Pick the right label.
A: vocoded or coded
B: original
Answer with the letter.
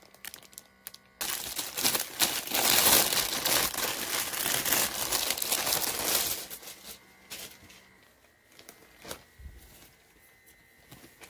B